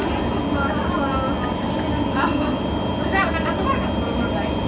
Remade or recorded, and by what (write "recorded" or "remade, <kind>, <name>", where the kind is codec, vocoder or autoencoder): recorded